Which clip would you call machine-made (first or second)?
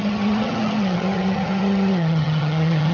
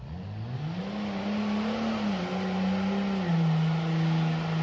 first